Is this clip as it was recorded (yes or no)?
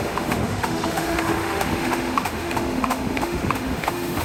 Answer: no